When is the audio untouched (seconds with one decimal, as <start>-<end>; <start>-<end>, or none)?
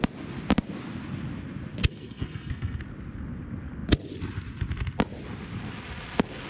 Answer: 0.0-1.8; 2.9-6.5